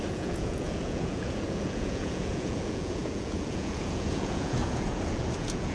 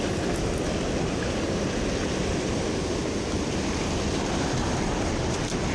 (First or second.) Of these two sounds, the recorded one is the second